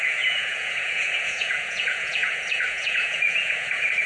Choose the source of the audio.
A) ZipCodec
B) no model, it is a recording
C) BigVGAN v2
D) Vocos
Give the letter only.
D